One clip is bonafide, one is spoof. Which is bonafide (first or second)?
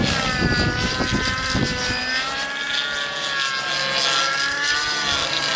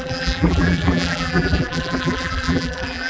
first